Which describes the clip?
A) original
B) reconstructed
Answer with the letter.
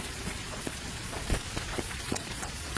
B